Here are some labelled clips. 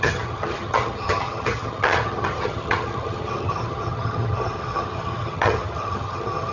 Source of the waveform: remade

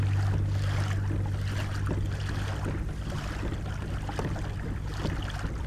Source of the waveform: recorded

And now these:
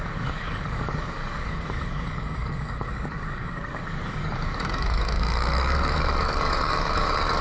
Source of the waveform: remade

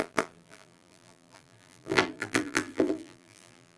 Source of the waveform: remade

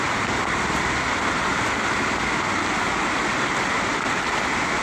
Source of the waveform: recorded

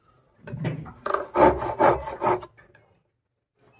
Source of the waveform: recorded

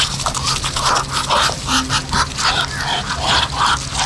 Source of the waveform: recorded